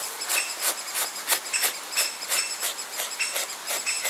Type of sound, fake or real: real